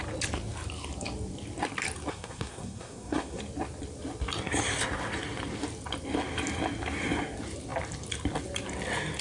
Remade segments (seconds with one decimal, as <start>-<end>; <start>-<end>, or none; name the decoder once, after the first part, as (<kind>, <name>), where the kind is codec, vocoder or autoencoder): 2.1-3.4 (codec, SNAC)